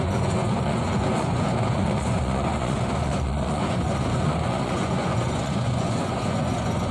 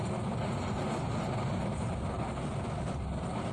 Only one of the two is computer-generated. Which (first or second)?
first